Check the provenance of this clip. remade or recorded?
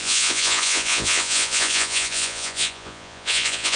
remade